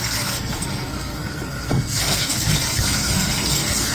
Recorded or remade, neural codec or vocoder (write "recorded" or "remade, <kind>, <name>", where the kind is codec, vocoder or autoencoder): remade, codec, SNAC